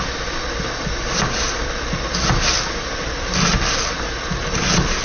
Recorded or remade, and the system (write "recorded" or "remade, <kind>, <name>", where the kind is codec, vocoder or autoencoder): recorded